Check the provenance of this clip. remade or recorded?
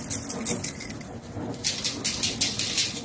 recorded